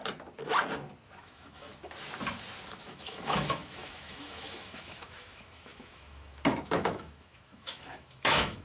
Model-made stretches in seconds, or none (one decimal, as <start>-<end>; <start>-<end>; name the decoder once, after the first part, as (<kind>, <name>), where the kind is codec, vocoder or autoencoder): 1.2-1.7 (autoencoder, DAC-VAE); 2.8-8.6